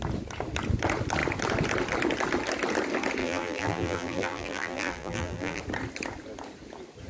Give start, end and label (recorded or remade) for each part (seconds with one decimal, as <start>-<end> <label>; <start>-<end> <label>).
0.0-3.2 recorded; 3.2-5.6 remade; 5.6-7.1 recorded